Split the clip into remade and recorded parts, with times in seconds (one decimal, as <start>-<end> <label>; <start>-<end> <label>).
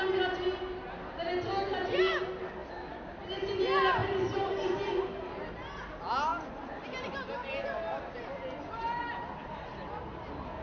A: 0.0-10.6 recorded